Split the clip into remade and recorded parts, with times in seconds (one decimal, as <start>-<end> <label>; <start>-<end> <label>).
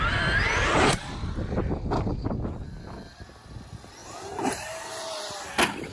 0.0-4.0 recorded; 4.0-5.5 remade; 5.5-5.9 recorded